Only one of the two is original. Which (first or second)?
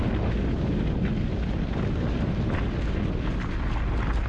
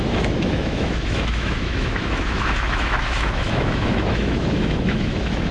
first